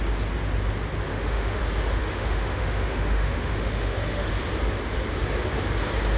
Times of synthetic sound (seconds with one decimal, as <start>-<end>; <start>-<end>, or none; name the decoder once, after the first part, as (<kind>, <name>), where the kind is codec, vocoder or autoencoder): 1.1-1.6 (autoencoder, DAC-VAE); 2.0-4.3

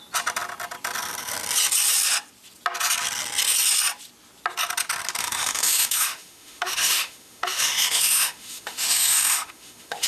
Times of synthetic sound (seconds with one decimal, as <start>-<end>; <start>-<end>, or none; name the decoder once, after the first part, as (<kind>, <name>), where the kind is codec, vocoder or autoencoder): 5.2-10.1 (autoencoder, DAC-VAE)